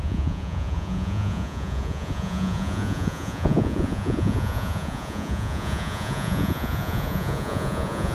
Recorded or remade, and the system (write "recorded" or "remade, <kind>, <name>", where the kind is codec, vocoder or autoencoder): remade, vocoder, Vocos